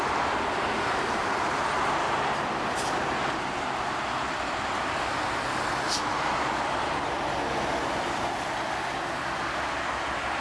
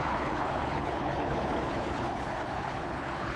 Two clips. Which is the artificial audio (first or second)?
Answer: second